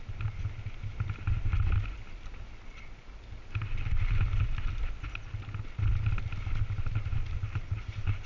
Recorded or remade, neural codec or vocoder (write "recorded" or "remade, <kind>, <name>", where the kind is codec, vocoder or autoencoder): recorded